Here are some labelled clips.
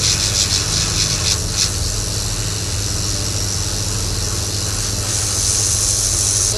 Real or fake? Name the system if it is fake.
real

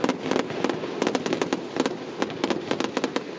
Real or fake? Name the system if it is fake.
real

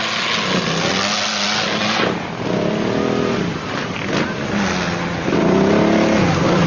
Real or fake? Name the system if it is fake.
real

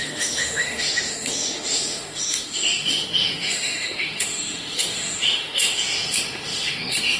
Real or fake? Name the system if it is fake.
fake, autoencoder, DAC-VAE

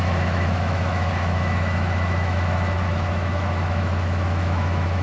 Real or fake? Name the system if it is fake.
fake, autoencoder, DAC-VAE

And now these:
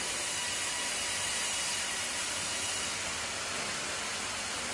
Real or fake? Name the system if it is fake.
real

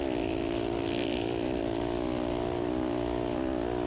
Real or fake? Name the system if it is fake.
real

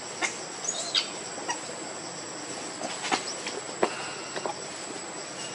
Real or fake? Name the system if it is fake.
real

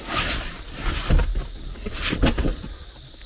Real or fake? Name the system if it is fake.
real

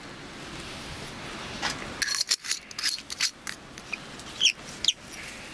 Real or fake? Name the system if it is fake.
real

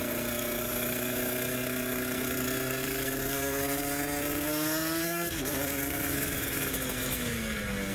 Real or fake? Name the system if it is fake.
fake, codec, SNAC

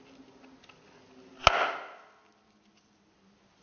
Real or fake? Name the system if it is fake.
real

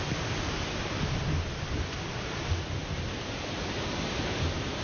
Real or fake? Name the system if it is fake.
real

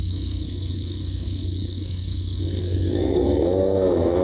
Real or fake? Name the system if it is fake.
fake, codec, SNAC